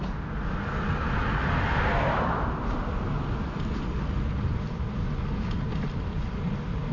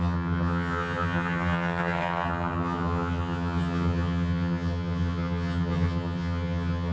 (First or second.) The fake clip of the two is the second